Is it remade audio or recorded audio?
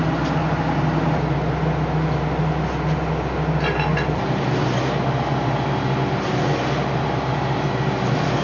recorded